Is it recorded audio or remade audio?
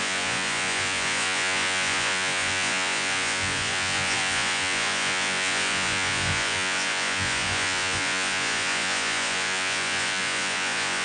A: remade